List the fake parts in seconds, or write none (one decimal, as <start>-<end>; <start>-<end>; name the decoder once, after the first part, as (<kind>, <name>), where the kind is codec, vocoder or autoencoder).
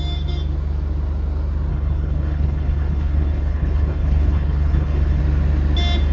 1.7-5.2 (codec, HILCodec)